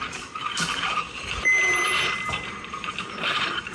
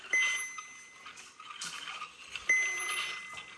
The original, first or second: second